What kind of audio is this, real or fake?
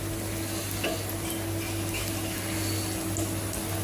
real